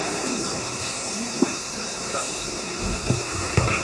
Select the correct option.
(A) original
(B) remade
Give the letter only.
B